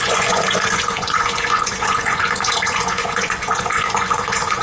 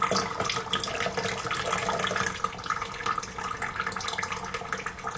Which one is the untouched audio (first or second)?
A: second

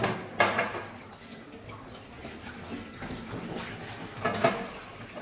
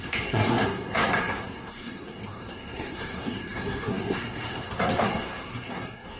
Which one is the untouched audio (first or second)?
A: first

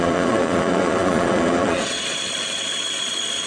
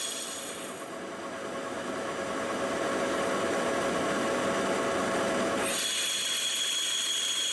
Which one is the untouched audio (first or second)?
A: second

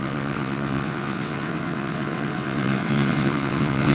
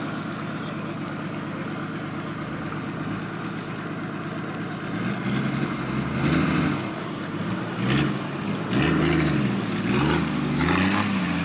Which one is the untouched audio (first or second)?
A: second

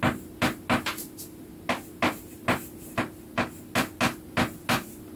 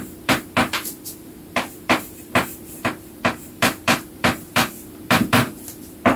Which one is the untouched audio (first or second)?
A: first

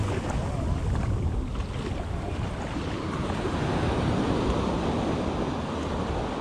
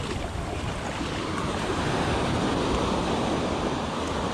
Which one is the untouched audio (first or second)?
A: first